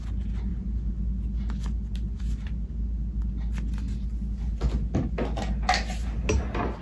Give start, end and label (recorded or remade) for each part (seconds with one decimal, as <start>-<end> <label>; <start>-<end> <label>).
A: 0.0-6.8 recorded